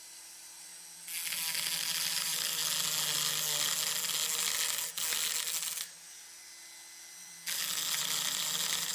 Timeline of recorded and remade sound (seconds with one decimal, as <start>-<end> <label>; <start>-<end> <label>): 0.0-0.7 remade; 0.7-2.0 recorded; 2.0-2.6 remade; 2.6-7.1 recorded; 7.1-8.9 remade